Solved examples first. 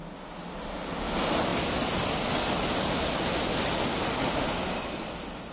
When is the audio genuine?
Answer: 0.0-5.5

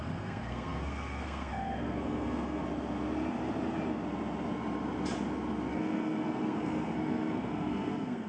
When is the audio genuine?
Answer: 2.6-5.7

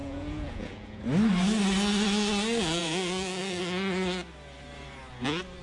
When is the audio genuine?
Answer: 1.0-2.8; 3.6-5.6

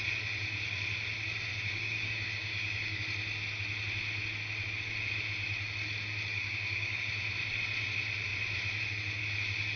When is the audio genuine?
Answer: 0.0-1.5; 3.0-6.3; 7.1-9.8

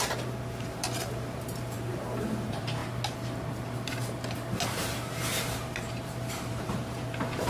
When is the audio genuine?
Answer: 2.8-4.5

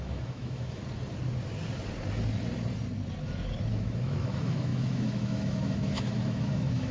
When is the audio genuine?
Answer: 0.8-3.7

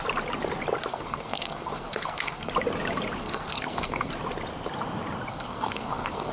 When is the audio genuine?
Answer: 0.0-0.9; 2.5-3.2; 4.1-5.3

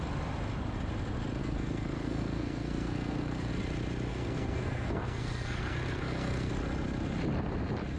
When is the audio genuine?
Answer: 0.0-1.4; 3.5-4.1; 6.5-8.0